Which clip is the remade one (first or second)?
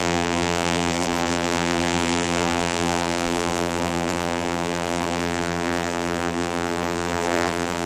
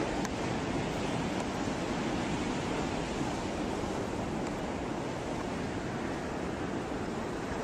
first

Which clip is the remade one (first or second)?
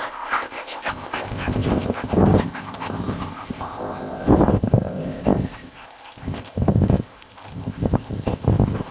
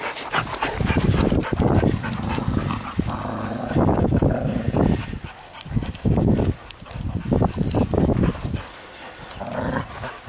first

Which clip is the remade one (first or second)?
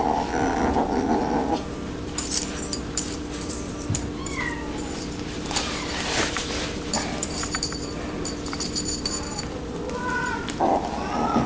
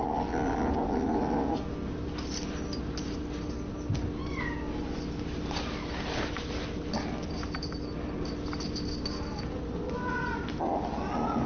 first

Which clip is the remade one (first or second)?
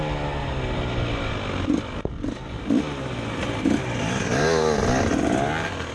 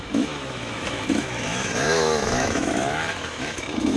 second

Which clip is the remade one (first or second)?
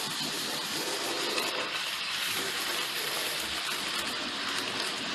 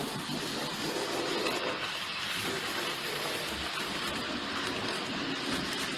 first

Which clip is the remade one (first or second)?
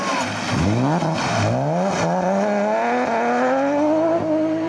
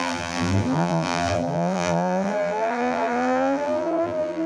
second